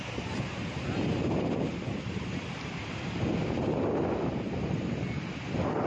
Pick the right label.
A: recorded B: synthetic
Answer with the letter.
A